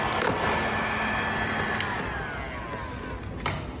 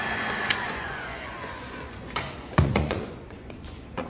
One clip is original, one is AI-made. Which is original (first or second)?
first